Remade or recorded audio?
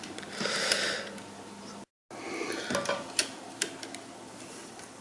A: recorded